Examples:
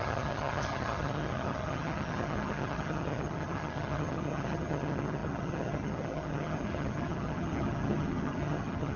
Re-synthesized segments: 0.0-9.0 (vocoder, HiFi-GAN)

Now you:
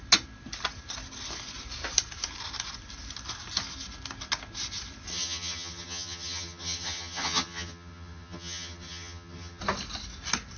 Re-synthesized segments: 5.1-9.6 (vocoder, HiFi-GAN)

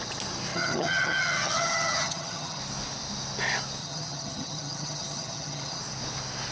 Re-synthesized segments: 0.5-2.6 (vocoder, HiFi-GAN); 3.8-5.8

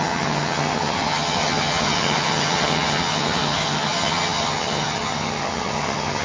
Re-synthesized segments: 0.0-6.2 (vocoder, HiFi-GAN)

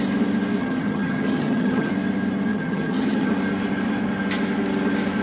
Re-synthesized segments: 0.6-1.9 (vocoder, HiFi-GAN); 2.5-3.3

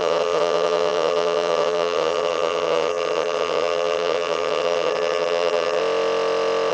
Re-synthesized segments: 0.0-5.8 (vocoder, HiFi-GAN)

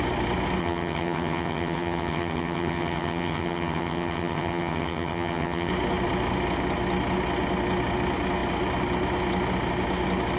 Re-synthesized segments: 0.6-5.7 (vocoder, HiFi-GAN)

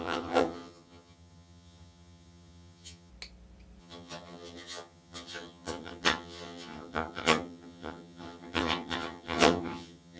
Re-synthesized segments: 0.0-3.1 (vocoder, HiFi-GAN); 3.8-10.2